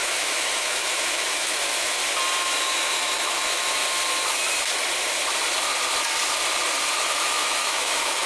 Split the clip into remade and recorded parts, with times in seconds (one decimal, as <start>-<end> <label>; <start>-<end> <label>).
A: 0.0-2.0 remade; 2.0-2.6 recorded; 2.6-3.8 remade; 3.8-6.9 recorded; 6.9-8.3 remade